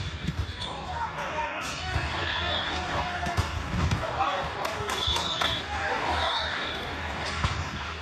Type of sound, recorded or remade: remade